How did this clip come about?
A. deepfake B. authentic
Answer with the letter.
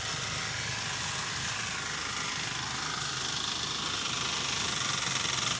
B